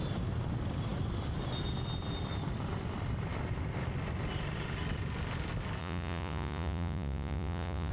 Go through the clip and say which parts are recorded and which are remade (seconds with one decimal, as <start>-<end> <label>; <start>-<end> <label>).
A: 0.0-5.8 recorded; 5.8-7.9 remade